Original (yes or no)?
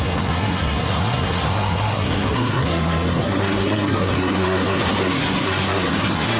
no